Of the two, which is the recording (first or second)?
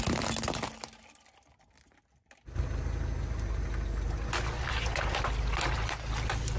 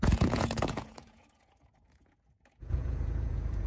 first